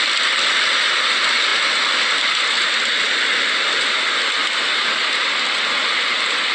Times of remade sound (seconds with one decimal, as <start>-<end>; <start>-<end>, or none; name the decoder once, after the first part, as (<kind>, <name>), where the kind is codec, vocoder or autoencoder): none